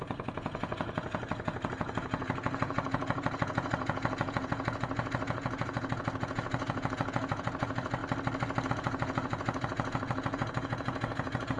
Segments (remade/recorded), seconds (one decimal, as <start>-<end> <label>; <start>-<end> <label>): 0.0-8.0 remade; 8.0-8.7 recorded; 8.7-11.6 remade